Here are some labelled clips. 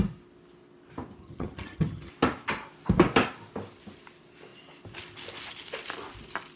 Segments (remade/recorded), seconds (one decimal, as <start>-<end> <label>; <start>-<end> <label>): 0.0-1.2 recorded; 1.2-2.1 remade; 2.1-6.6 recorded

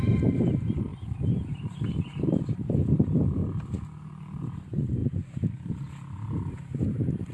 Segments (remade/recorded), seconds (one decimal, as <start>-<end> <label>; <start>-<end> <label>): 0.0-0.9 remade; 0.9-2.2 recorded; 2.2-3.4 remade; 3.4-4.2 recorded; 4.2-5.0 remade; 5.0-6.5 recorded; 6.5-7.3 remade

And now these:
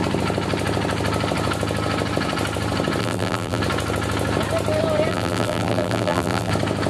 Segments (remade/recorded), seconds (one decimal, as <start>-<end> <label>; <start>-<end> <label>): 0.0-3.0 recorded; 3.0-3.6 remade; 3.6-5.1 recorded; 5.1-6.5 remade; 6.5-6.9 recorded

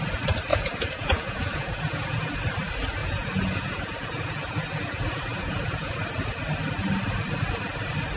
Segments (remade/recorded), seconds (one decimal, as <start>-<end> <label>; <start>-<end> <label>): 0.0-0.5 recorded; 0.5-2.3 remade; 2.3-3.0 recorded; 3.0-5.9 remade; 5.9-8.2 recorded

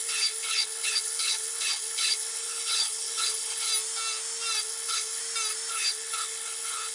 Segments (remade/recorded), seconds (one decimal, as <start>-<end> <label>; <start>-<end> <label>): 0.0-3.7 remade; 3.7-4.6 recorded; 4.6-5.2 remade; 5.2-5.7 recorded; 5.7-6.9 remade

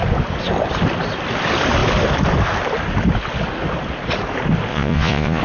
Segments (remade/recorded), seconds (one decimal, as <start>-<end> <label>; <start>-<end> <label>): 0.0-4.7 recorded; 4.7-5.4 remade

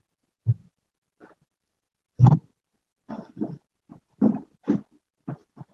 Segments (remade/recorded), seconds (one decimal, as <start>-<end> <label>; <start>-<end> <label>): 0.0-0.6 recorded; 0.6-3.1 remade; 3.1-3.9 recorded; 3.9-5.2 remade; 5.2-5.7 recorded

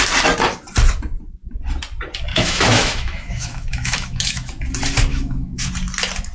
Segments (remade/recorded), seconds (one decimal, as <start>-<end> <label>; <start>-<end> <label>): 0.0-2.3 recorded; 2.3-4.5 remade; 4.5-5.1 recorded; 5.1-5.6 remade; 5.6-6.3 recorded